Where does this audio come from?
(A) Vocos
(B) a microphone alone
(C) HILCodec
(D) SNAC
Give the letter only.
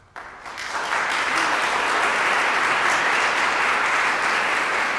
B